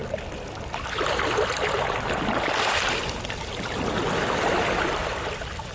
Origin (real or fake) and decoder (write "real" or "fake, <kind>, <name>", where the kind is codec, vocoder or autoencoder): real